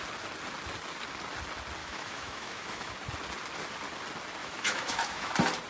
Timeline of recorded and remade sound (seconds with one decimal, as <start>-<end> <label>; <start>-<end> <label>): 0.0-1.8 recorded; 1.8-2.9 remade; 2.9-4.4 recorded; 4.4-5.3 remade; 5.3-5.7 recorded